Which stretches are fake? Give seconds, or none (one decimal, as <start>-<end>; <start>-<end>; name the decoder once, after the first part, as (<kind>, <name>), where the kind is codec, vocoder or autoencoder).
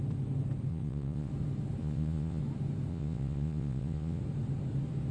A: 0.7-1.3 (vocoder, Vocos); 1.8-2.4; 2.9-4.2